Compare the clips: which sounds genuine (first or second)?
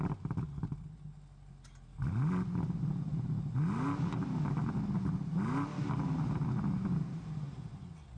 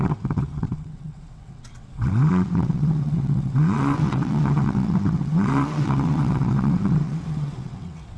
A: first